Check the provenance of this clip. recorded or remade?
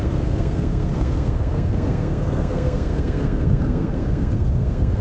remade